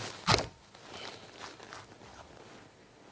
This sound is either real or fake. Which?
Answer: real